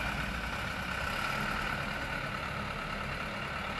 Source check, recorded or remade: recorded